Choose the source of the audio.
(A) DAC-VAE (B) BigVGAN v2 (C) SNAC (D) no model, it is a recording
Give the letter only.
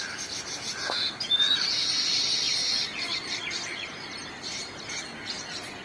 D